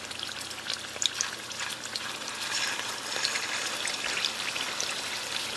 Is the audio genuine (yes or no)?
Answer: yes